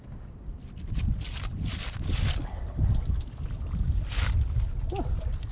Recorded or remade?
recorded